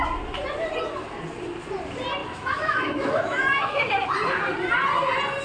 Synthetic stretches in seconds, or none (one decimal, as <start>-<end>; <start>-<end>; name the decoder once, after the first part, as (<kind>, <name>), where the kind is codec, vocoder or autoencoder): 2.2-3.9 (autoencoder, DAC-VAE)